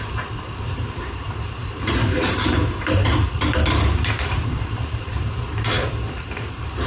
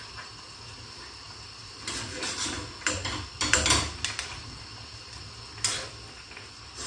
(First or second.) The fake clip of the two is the first